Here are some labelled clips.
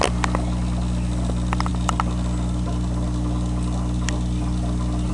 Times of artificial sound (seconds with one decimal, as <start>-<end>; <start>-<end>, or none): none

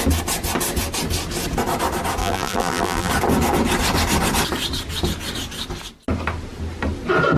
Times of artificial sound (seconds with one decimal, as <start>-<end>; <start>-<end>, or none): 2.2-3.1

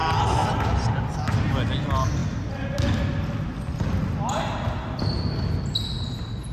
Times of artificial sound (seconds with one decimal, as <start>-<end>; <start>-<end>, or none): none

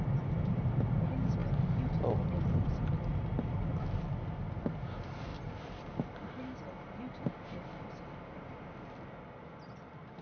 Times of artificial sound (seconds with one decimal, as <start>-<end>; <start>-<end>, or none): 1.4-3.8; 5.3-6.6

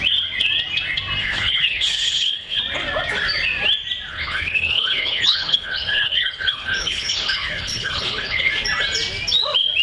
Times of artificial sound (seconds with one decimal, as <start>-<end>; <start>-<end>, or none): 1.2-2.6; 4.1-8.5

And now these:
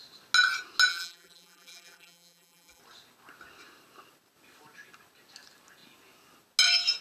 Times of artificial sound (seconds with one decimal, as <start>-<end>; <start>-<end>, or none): 0.9-2.8

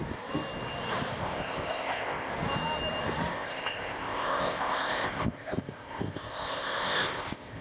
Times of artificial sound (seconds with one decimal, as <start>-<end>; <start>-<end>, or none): 1.2-2.3; 3.3-7.6

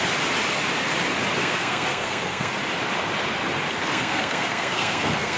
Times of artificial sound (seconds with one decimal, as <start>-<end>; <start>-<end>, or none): 1.4-2.5; 3.8-5.4